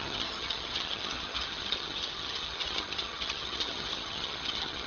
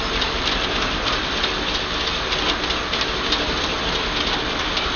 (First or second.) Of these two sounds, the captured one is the second